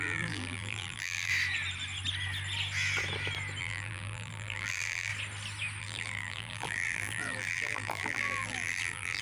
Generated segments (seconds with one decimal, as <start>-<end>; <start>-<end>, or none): 0.0-1.3; 3.6-5.1; 5.8-9.2